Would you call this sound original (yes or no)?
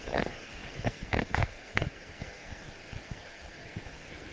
no